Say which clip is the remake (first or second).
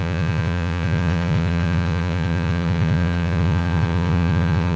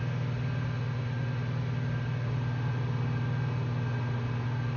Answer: first